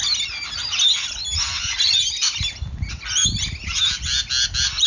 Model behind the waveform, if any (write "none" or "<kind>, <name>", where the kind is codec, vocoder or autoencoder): none